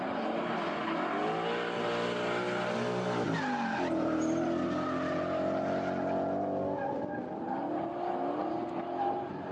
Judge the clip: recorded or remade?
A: recorded